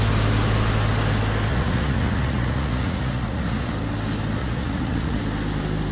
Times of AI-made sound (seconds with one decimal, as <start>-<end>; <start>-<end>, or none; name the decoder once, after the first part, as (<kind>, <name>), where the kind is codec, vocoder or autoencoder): 1.5-3.7 (vocoder, Vocos); 4.4-5.2